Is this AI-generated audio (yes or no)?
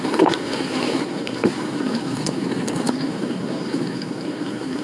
yes